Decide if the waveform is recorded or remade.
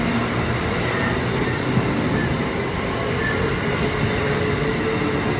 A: recorded